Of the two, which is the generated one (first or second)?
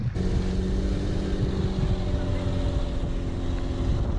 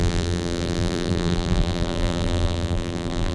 second